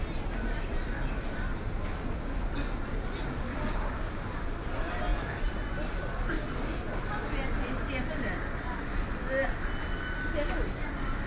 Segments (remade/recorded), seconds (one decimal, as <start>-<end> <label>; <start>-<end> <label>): 0.0-11.3 recorded